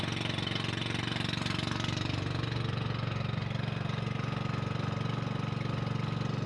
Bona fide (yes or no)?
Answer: yes